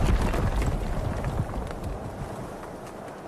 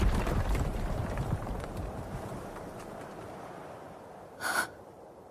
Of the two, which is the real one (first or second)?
first